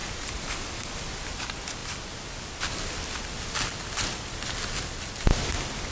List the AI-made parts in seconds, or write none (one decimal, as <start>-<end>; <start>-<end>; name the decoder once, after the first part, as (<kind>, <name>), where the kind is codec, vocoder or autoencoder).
none